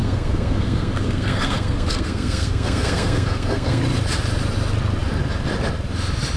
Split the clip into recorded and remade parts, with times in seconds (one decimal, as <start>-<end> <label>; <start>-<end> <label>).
0.0-3.8 remade; 3.8-6.4 recorded